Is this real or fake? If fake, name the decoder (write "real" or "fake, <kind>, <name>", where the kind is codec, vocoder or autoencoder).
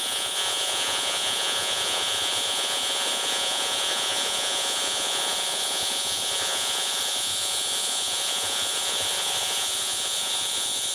fake, vocoder, Vocos